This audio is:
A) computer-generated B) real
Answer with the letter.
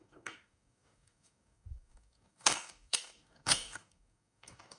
A